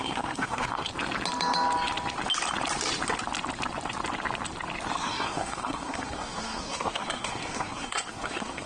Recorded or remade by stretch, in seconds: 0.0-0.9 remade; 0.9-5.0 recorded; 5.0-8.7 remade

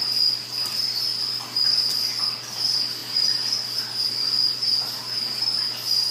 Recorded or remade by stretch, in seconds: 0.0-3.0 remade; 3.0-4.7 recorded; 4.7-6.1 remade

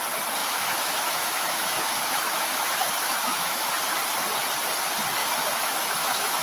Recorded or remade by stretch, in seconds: 0.0-0.4 recorded; 0.4-3.7 remade; 3.7-5.2 recorded; 5.2-6.4 remade

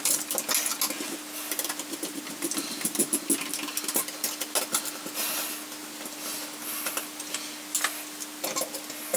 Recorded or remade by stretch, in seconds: 0.0-9.2 recorded

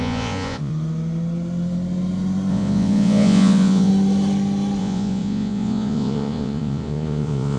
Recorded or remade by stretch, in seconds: 0.0-0.7 remade; 0.7-2.5 recorded; 2.5-3.9 remade; 3.9-4.8 recorded; 4.8-7.6 remade

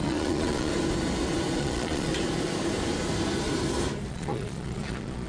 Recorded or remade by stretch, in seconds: 0.0-0.7 remade; 0.7-1.6 recorded; 1.6-2.1 remade; 2.1-4.1 recorded; 4.1-5.3 remade